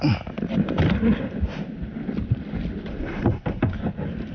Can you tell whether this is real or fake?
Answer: real